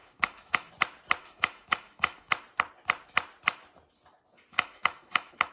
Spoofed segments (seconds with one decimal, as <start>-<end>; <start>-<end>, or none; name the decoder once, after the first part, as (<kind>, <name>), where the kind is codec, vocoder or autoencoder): 0.0-0.7 (autoencoder, DAC-VAE); 1.2-2.3; 4.5-5.5